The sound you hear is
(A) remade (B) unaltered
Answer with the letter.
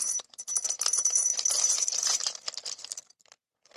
A